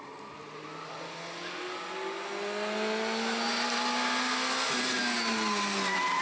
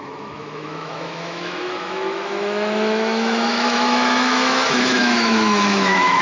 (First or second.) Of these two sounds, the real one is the first